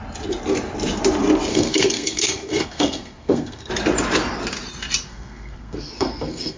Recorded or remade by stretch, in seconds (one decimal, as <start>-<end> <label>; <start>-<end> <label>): 0.0-1.5 recorded; 1.5-3.7 remade; 3.7-5.1 recorded; 5.1-6.6 remade